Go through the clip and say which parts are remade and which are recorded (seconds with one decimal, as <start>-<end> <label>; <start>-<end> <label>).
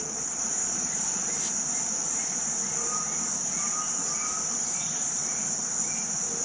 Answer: 0.0-1.3 remade; 1.3-4.8 recorded; 4.8-5.2 remade; 5.2-6.4 recorded